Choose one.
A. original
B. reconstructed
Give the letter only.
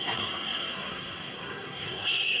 B